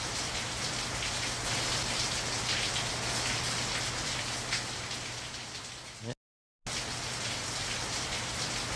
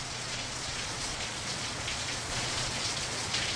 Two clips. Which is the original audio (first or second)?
first